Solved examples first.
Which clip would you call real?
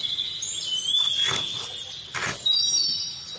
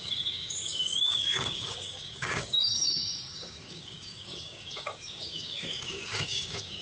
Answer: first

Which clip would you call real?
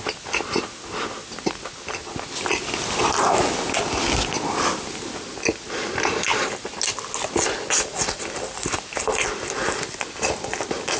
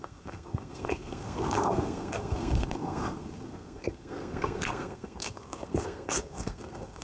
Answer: first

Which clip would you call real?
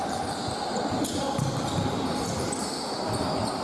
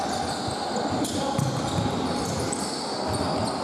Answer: second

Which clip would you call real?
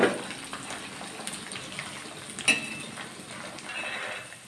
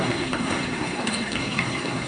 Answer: first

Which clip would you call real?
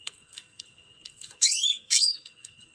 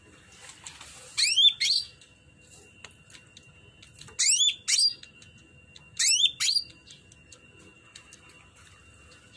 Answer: second